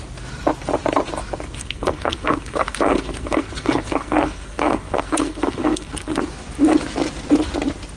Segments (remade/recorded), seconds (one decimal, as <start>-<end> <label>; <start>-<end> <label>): 0.0-1.6 recorded; 1.6-6.2 remade; 6.2-8.0 recorded

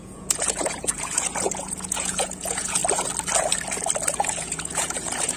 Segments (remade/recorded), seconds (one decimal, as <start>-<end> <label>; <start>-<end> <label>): 0.0-2.8 remade; 2.8-4.1 recorded; 4.1-5.4 remade

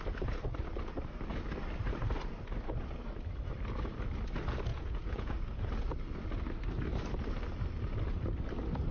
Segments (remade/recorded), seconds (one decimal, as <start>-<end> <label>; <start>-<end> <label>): 0.0-4.7 recorded; 4.7-5.7 remade; 5.7-8.9 recorded

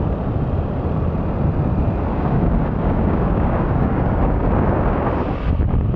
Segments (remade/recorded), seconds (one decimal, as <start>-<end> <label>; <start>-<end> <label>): 0.0-2.1 recorded; 2.1-5.1 remade; 5.1-6.0 recorded